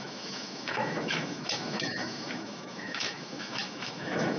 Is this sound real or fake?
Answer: fake